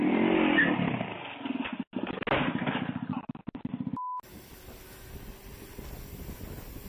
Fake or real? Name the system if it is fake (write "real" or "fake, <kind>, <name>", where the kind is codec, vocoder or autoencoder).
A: real